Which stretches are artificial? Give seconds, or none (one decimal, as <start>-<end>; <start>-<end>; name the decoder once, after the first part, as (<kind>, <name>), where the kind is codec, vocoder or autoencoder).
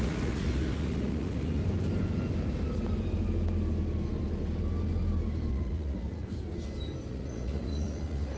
0.0-1.6 (vocoder, Vocos); 5.5-6.3; 7.1-8.4